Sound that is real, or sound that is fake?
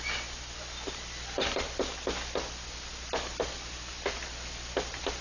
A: real